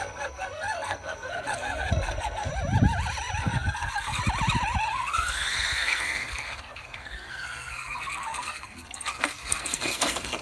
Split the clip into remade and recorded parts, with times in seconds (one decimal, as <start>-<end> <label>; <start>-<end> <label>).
0.0-2.5 remade; 2.5-3.4 recorded; 3.4-4.2 remade; 4.2-4.9 recorded; 4.9-10.4 remade